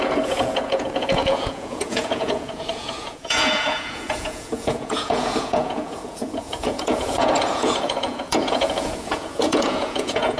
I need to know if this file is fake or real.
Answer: fake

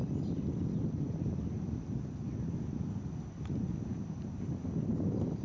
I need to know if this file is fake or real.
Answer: real